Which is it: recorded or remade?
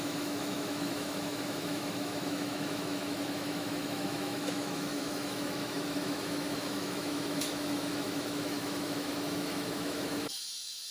remade